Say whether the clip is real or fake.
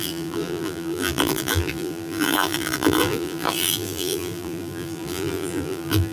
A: fake